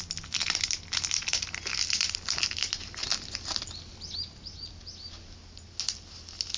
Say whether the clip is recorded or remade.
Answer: recorded